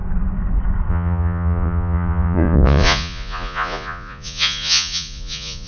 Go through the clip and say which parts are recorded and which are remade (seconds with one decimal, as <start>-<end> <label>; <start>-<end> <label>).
0.0-0.9 recorded; 0.9-5.7 remade